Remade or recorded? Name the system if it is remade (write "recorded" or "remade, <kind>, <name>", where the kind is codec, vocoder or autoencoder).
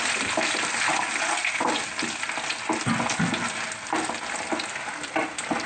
recorded